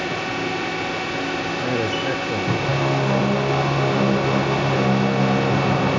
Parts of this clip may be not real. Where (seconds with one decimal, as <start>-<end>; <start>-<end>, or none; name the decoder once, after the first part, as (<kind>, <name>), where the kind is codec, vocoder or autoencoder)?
none